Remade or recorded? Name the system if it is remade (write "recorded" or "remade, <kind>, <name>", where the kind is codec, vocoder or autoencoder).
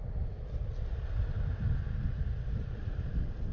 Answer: recorded